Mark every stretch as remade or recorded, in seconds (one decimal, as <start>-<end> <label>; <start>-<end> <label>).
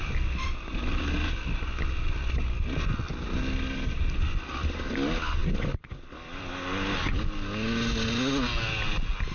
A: 0.0-9.3 recorded